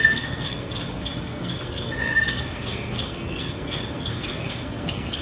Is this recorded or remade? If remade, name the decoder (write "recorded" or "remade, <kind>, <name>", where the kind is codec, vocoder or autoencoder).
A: remade, codec, SNAC